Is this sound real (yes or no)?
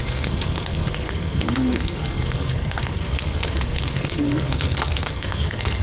no